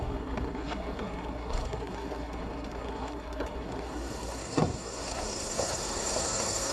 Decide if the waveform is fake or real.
fake